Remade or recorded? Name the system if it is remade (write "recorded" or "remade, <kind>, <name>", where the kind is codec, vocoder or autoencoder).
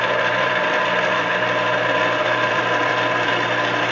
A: remade, vocoder, BigVGAN v2